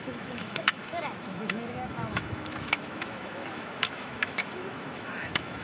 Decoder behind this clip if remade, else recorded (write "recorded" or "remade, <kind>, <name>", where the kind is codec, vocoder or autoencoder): remade, autoencoder, DAC-VAE